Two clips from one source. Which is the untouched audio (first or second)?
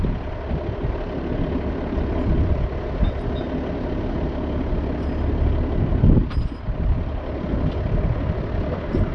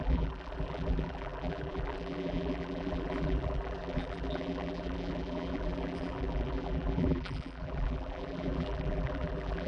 first